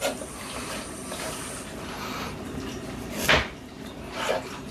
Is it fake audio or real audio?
fake